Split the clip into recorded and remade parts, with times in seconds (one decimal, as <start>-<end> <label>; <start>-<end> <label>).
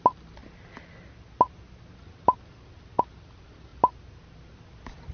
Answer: 0.0-5.1 recorded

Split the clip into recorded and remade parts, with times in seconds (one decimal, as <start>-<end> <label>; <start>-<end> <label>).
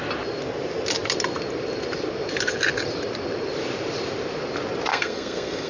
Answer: 0.0-4.9 recorded; 4.9-5.7 remade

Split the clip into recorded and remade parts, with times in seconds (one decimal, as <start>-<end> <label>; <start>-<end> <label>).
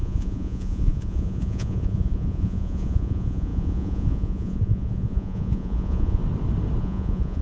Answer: 0.0-6.2 remade; 6.2-6.8 recorded; 6.8-7.4 remade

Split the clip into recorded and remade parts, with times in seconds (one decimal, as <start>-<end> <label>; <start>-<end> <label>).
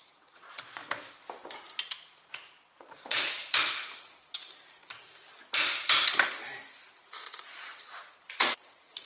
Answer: 0.0-0.8 remade; 0.8-1.9 recorded; 1.9-3.4 remade; 3.4-4.0 recorded; 4.0-4.4 remade; 4.4-6.8 recorded; 6.8-9.1 remade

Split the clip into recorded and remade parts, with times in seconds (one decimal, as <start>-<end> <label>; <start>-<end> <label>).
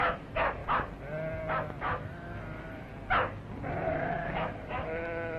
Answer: 0.0-0.6 remade; 0.6-1.8 recorded; 1.8-2.9 remade; 2.9-3.9 recorded; 3.9-5.4 remade